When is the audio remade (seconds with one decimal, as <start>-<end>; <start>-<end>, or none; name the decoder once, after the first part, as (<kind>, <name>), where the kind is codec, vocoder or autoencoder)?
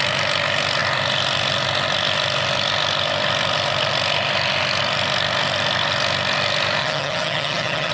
6.8-7.9 (vocoder, HiFi-GAN)